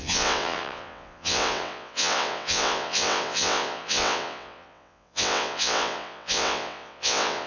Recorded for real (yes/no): no